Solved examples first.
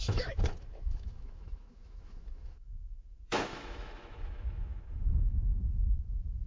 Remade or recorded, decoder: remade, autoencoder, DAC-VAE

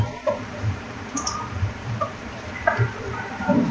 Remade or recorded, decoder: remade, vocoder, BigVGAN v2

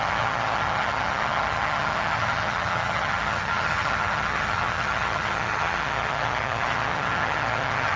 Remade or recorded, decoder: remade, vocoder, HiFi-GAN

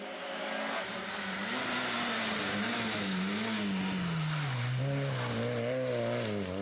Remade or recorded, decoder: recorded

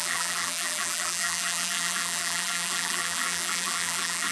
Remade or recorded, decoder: remade, vocoder, BigVGAN v2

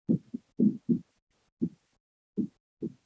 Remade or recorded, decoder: recorded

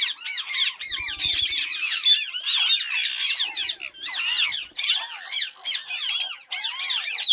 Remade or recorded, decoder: recorded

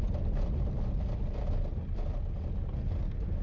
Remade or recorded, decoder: recorded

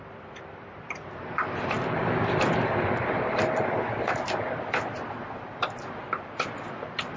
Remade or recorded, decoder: remade, vocoder, BigVGAN v2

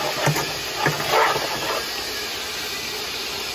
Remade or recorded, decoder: recorded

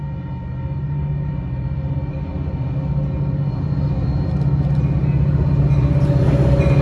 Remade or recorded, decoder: recorded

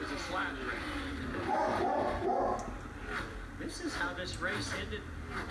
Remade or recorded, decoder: recorded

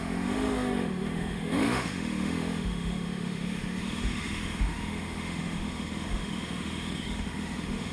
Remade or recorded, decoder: remade, autoencoder, DAC-VAE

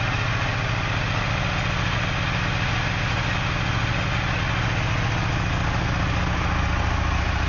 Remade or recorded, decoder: recorded